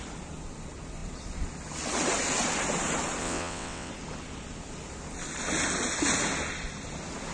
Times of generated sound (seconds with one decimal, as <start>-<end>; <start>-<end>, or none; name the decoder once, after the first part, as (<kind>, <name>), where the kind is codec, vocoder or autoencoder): 3.2-3.9 (vocoder, WaveNeXt)